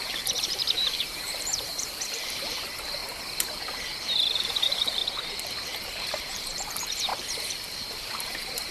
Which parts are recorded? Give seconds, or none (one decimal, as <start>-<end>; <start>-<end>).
3.0-4.5; 5.0-5.5